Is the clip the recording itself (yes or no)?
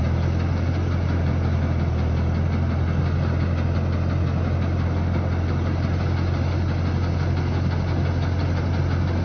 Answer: yes